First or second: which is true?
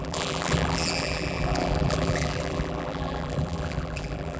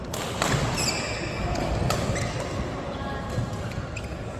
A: second